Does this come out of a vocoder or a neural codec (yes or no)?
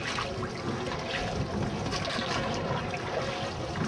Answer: no